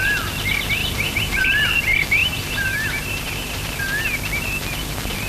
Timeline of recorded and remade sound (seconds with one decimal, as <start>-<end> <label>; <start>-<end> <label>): 0.0-0.8 recorded; 0.8-1.4 remade; 1.4-2.2 recorded; 2.2-3.8 remade; 3.8-5.3 recorded